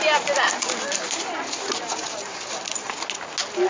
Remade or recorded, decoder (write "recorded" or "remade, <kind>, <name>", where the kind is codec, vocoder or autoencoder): recorded